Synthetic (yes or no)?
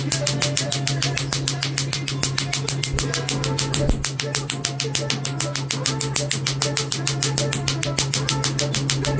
no